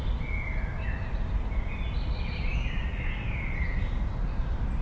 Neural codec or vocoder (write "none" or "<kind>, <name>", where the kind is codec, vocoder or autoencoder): none